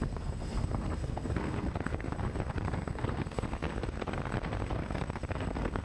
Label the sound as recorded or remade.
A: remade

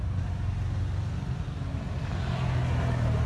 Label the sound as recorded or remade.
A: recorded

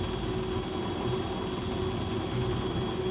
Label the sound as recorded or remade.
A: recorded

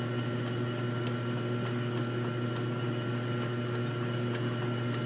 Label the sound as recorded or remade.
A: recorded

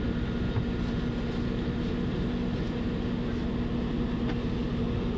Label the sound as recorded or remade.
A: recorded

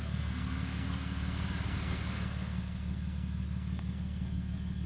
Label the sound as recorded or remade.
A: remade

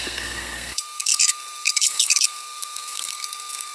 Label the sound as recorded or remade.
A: remade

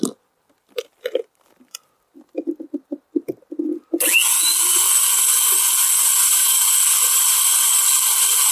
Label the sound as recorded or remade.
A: recorded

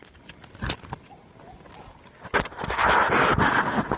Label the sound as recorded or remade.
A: recorded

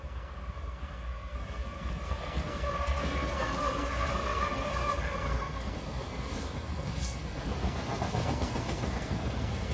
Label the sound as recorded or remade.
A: remade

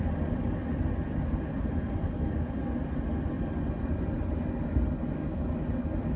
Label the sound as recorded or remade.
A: recorded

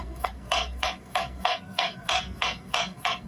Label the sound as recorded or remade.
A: remade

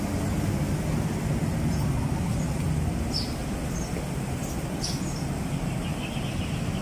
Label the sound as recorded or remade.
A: recorded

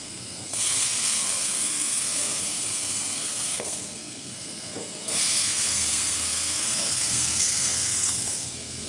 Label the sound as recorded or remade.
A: remade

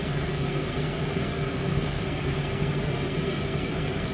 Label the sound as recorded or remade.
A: remade